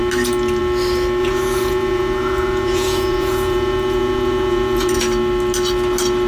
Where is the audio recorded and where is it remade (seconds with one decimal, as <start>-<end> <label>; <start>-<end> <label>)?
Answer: 0.0-1.2 recorded; 1.2-5.0 remade; 5.0-6.3 recorded

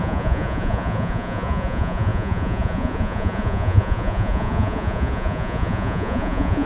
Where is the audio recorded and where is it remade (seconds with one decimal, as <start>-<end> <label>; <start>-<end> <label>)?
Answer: 0.0-6.7 remade

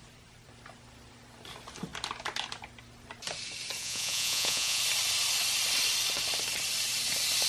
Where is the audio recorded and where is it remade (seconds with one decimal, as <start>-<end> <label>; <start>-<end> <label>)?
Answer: 0.0-3.8 recorded; 3.8-4.8 remade; 4.8-7.5 recorded

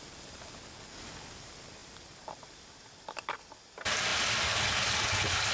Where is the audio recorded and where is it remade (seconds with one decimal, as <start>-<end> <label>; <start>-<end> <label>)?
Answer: 0.0-5.5 recorded